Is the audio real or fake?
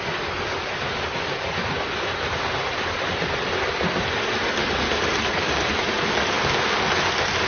real